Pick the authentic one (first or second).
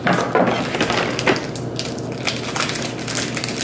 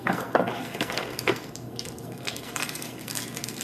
first